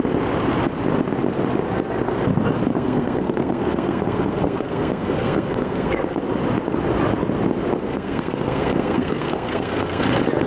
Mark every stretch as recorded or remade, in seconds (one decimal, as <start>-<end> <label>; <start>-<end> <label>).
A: 0.0-2.7 recorded; 2.7-6.2 remade; 6.2-7.9 recorded; 7.9-10.0 remade; 10.0-10.5 recorded